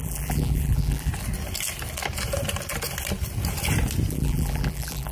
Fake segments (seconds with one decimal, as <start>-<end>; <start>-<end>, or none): 0.0-1.1; 4.1-5.1